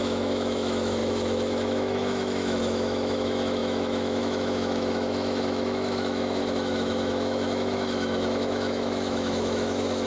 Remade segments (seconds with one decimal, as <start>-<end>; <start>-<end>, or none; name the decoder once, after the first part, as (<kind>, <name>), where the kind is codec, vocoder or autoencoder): 0.0-10.1 (autoencoder, DAC-VAE)